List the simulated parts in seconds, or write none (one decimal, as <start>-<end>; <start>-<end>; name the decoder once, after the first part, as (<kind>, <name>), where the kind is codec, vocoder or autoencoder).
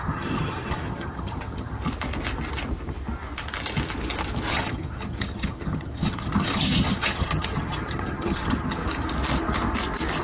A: 0.0-1.8 (vocoder, HiFi-GAN); 4.5-8.8